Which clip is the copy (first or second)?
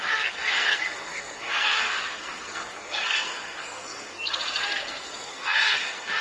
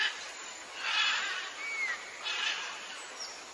first